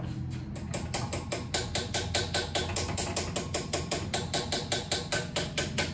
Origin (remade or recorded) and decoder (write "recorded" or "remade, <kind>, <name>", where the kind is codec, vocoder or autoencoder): recorded